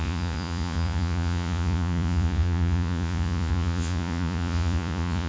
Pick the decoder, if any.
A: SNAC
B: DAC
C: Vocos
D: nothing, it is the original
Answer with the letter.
C